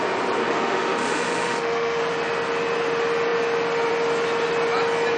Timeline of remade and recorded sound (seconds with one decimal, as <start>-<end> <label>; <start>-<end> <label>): 0.0-0.4 recorded; 0.4-2.0 remade; 2.0-5.2 recorded